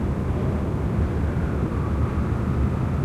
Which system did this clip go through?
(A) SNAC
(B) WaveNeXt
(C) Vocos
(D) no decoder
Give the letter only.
D